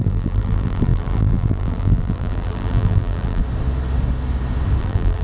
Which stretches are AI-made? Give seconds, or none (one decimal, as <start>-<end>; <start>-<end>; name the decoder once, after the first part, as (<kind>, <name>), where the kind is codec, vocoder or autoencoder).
0.0-3.4 (vocoder, BigVGAN v2); 4.8-5.2